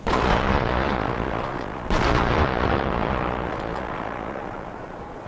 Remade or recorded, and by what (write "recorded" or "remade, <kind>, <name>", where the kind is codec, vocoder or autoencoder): remade, vocoder, Vocos